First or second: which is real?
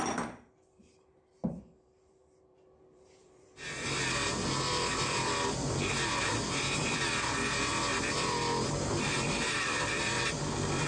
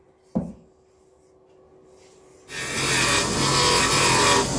second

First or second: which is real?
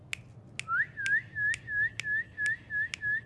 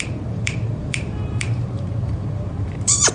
first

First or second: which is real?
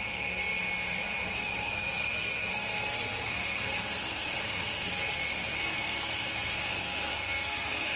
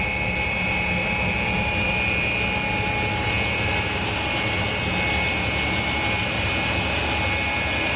second